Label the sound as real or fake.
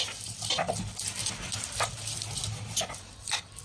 real